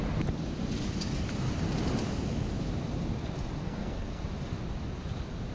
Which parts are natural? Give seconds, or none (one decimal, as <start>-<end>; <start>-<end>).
0.0-3.6; 4.2-5.5